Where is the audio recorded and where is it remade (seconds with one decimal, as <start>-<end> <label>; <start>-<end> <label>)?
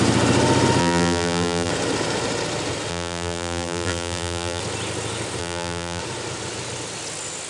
0.0-0.8 recorded; 0.8-1.7 remade; 1.7-2.9 recorded; 2.9-4.6 remade; 4.6-5.4 recorded; 5.4-6.0 remade; 6.0-7.5 recorded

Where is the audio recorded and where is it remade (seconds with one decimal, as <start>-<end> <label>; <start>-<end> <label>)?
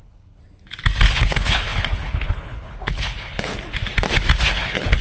0.0-0.4 remade; 0.4-1.2 recorded; 1.2-3.5 remade; 3.5-4.5 recorded; 4.5-5.0 remade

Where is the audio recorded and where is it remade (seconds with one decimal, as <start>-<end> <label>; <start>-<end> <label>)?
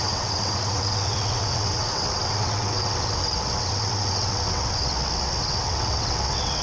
0.0-6.6 remade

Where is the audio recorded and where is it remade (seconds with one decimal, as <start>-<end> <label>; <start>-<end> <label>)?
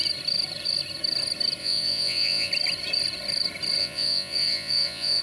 0.0-1.6 recorded; 1.6-2.5 remade; 2.5-3.8 recorded; 3.8-5.2 remade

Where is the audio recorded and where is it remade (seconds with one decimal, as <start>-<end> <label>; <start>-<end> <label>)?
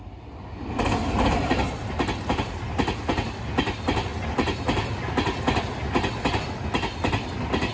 0.0-7.7 recorded